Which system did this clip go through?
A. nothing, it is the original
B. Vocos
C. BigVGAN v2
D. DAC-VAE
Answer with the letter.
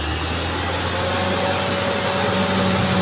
A